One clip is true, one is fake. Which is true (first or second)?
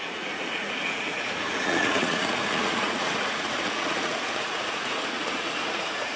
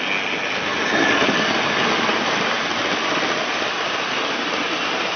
second